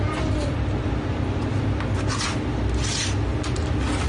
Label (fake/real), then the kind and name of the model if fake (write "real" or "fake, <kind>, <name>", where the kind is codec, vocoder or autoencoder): real